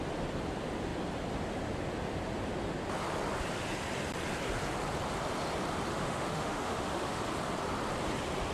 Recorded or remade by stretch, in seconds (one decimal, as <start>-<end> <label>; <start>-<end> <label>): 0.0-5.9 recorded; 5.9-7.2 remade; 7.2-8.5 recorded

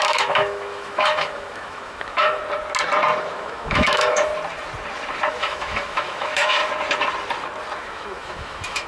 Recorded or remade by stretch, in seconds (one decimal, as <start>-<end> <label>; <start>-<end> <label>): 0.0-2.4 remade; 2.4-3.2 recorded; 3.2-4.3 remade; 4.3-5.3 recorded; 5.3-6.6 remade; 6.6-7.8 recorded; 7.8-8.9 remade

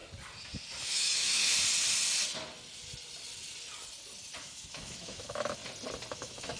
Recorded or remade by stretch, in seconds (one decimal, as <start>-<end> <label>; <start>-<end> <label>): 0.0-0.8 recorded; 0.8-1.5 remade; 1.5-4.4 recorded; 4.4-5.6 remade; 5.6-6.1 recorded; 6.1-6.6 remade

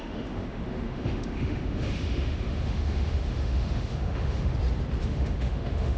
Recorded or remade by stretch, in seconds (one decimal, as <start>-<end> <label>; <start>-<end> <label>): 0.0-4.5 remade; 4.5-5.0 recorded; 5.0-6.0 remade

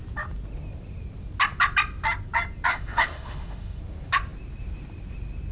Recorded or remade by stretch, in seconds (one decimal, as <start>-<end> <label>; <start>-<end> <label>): 0.0-2.7 recorded; 2.7-3.8 remade; 3.8-5.5 recorded

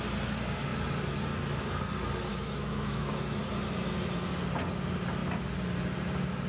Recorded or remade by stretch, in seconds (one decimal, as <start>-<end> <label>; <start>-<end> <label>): 0.0-2.3 recorded; 2.3-3.4 remade; 3.4-6.5 recorded

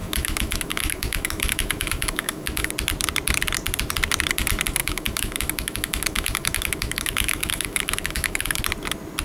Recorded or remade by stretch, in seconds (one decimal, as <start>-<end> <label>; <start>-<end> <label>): 0.0-2.7 remade; 2.7-4.8 recorded; 4.8-8.6 remade; 8.6-9.2 recorded

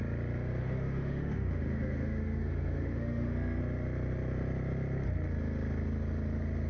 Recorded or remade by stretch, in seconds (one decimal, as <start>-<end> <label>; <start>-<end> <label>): 0.0-0.6 recorded; 0.6-3.6 remade; 3.6-6.7 recorded